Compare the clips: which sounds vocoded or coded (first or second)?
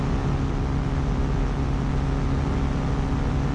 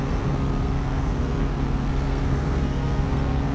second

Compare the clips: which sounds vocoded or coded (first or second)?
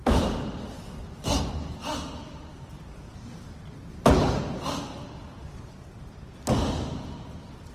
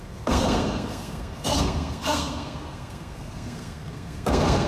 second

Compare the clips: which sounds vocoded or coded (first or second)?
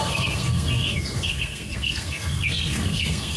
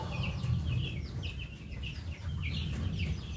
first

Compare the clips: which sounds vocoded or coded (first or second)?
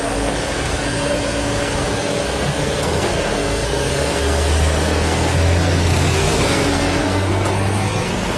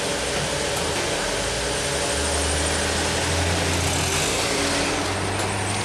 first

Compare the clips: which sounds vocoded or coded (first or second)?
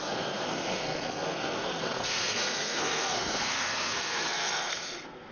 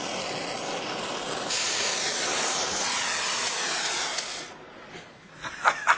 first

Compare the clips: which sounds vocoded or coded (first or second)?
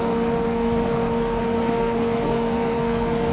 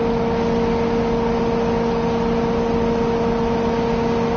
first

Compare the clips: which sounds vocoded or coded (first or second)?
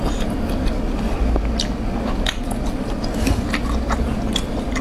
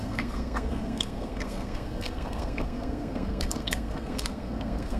second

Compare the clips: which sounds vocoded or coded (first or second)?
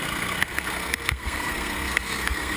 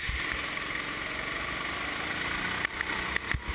first